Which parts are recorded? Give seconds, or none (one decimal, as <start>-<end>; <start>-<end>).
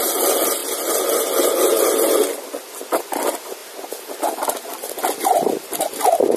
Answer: 0.0-6.4